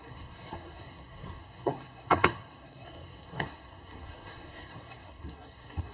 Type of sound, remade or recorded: remade